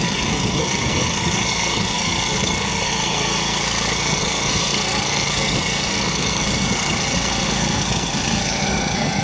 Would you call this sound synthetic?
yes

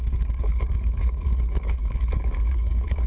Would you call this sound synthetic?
yes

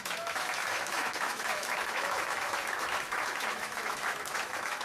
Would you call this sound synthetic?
yes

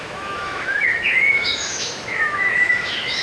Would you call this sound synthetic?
yes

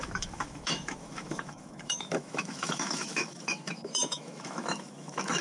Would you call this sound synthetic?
yes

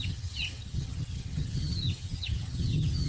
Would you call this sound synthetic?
yes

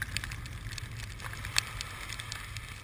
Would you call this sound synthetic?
no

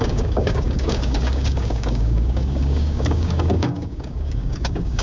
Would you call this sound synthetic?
yes